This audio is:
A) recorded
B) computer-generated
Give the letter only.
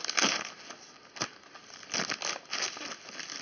A